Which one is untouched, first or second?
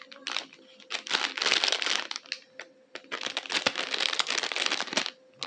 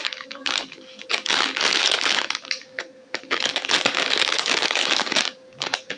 first